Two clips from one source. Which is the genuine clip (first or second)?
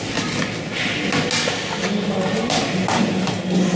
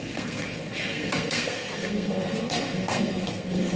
first